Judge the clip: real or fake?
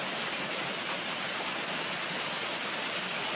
real